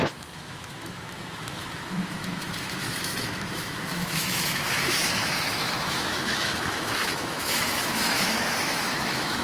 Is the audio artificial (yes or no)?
yes